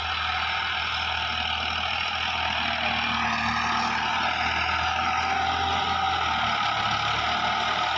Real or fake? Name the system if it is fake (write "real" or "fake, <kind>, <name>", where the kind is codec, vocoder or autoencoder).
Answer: real